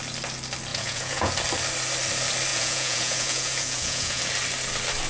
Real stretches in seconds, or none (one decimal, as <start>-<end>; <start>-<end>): 0.0-0.7; 1.3-2.5; 4.2-5.1